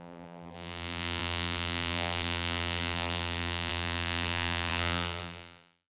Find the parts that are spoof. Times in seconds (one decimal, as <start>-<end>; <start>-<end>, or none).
0.0-5.9